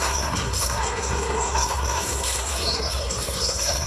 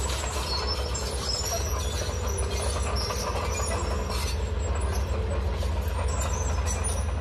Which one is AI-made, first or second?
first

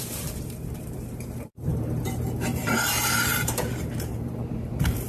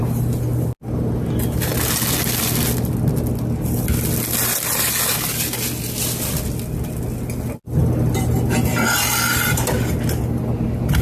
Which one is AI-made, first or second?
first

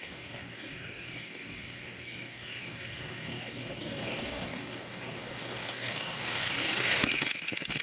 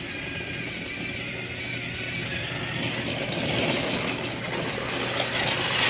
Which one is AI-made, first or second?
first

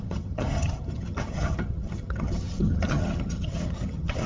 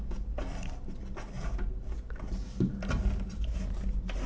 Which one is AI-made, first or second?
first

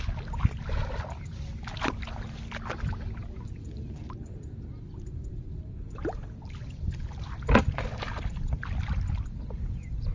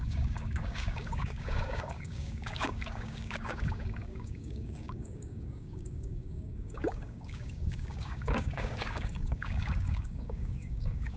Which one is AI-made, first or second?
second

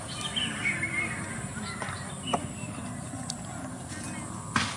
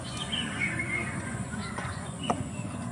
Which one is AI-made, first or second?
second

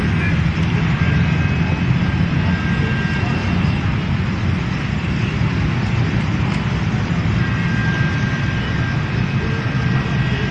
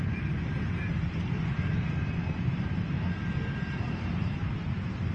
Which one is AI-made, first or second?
second